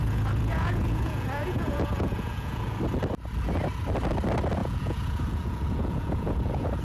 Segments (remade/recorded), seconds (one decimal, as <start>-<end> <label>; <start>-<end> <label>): 0.0-2.8 remade; 2.8-4.6 recorded; 4.6-6.8 remade